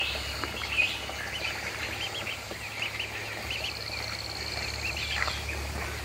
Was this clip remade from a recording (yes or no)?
yes